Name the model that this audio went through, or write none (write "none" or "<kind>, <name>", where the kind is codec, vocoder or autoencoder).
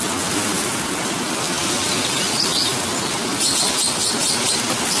none